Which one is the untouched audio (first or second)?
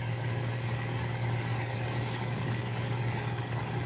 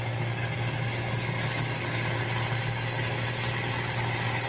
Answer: second